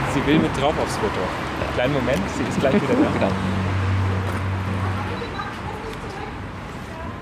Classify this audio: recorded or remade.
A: recorded